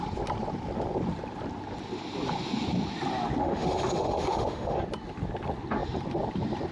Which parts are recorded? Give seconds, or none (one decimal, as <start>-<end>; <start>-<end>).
0.0-3.4; 4.8-6.7